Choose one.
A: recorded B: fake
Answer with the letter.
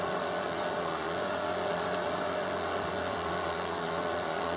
B